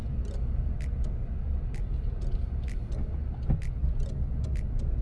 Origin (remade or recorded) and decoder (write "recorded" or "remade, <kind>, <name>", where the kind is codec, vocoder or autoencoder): recorded